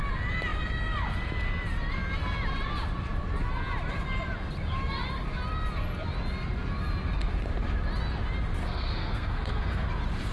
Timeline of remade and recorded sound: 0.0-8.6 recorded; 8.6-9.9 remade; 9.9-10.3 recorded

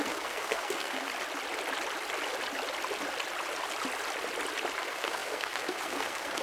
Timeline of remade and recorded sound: 0.0-1.1 remade; 1.1-4.8 recorded; 4.8-6.4 remade

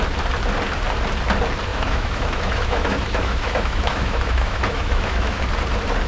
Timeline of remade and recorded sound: 0.0-1.7 recorded; 1.7-5.4 remade; 5.4-6.1 recorded

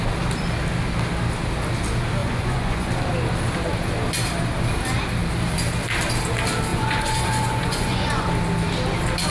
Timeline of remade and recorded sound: 0.0-2.2 recorded; 2.2-2.9 remade; 2.9-6.7 recorded; 6.7-8.3 remade; 8.3-9.3 recorded

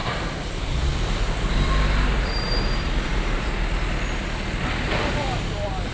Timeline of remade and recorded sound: 0.0-3.5 remade; 3.5-5.9 recorded